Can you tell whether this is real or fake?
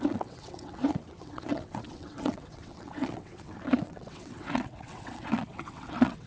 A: fake